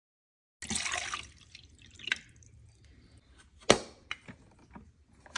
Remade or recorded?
recorded